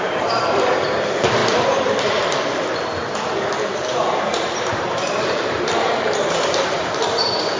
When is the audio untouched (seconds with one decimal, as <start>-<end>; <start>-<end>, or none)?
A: 1.4-3.2